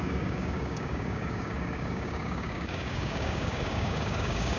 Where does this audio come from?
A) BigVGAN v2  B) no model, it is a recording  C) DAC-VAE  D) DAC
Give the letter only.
D